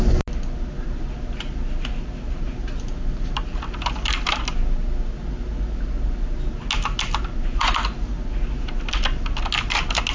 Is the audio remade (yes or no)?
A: no